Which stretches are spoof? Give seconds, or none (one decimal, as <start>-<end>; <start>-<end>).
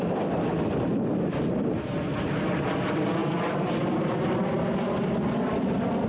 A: none